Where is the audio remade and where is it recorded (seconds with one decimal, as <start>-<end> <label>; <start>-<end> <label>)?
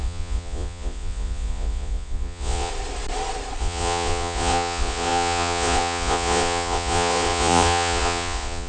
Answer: 0.0-2.7 remade; 2.7-3.6 recorded; 3.6-8.7 remade